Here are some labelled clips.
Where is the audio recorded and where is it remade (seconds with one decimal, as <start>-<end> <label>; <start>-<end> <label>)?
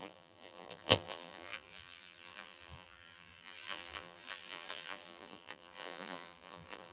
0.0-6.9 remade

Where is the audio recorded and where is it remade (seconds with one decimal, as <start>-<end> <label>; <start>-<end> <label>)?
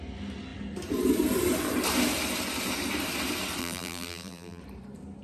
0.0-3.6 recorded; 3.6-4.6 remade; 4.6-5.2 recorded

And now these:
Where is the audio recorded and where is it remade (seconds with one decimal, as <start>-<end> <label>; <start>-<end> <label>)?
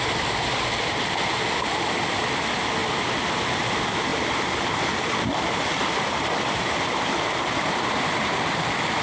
0.0-2.8 recorded; 2.8-3.3 remade; 3.3-4.1 recorded; 4.1-8.1 remade; 8.1-9.0 recorded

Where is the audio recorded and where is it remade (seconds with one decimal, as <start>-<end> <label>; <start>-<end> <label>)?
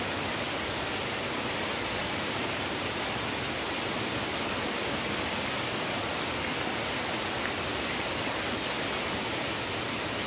0.0-2.0 recorded; 2.0-3.0 remade; 3.0-10.3 recorded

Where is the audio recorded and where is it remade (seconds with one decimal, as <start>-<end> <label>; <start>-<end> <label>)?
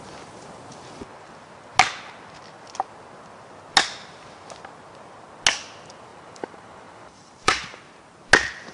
0.0-6.1 recorded; 6.1-7.8 remade; 7.8-8.7 recorded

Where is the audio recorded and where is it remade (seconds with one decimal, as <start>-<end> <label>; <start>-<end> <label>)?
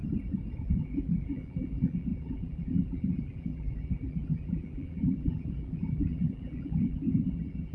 0.0-0.6 recorded; 0.6-7.7 remade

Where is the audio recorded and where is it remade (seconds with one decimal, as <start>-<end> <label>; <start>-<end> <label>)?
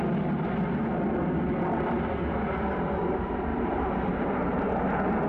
0.0-3.5 recorded; 3.5-4.6 remade; 4.6-5.3 recorded